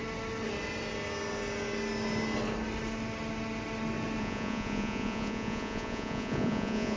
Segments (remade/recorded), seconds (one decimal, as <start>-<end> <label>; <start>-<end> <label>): 0.0-4.2 recorded; 4.2-7.0 remade